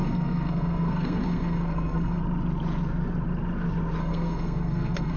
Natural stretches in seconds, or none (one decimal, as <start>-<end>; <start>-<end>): 2.2-4.0